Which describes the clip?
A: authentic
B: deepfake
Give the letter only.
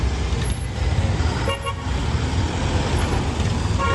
A